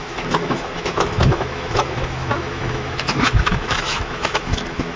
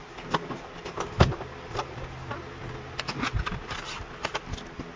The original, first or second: second